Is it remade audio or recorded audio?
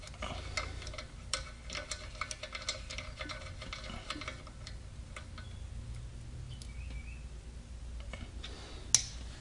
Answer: recorded